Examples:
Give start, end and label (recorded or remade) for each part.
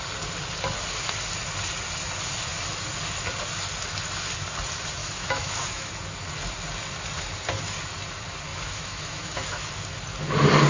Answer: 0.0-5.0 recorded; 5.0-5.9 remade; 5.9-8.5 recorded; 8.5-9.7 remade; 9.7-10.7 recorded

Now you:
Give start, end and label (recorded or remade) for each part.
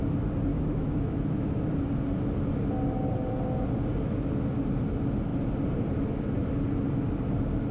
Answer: 0.0-0.5 recorded; 0.5-1.6 remade; 1.6-7.7 recorded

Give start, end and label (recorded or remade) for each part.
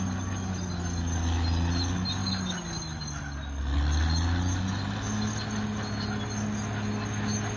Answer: 0.0-7.6 recorded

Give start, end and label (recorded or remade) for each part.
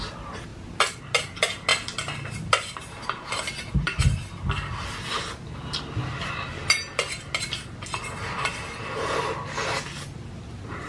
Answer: 0.0-10.9 recorded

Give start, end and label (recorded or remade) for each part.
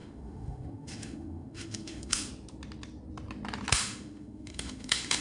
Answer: 0.0-2.3 remade; 2.3-3.7 recorded; 3.7-5.2 remade